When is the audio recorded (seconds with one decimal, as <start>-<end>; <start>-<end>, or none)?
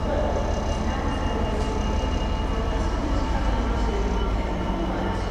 0.0-3.0; 4.7-5.3